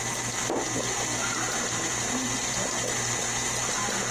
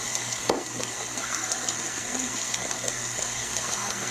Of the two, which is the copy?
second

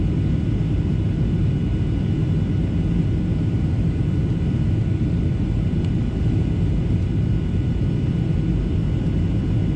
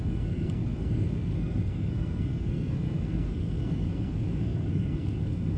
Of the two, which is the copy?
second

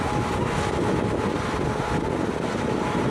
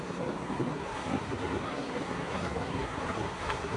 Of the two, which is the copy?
second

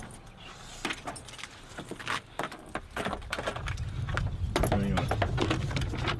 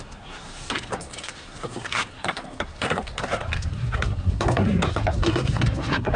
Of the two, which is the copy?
second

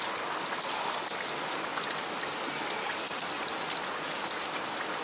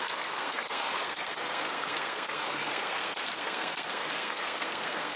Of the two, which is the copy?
second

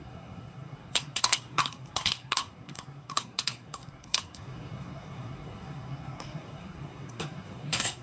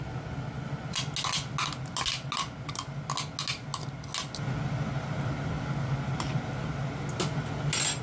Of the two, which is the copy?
first